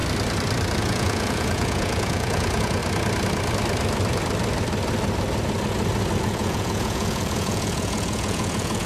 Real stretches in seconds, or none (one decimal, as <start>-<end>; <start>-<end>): 0.0-0.8; 2.8-6.2

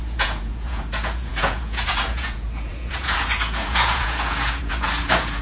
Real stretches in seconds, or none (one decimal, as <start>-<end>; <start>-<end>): none

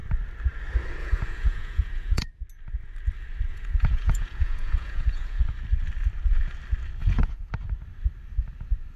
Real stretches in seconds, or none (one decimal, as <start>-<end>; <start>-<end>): 0.0-1.0; 2.3-3.5; 5.4-7.0; 7.5-9.0

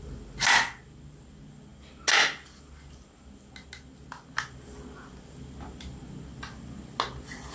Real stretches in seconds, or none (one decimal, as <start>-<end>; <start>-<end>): 0.0-7.5

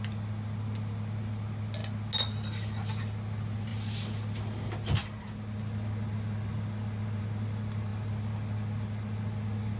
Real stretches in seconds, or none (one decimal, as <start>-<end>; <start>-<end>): 0.0-9.8